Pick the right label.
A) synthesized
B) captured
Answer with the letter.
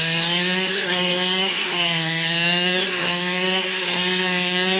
A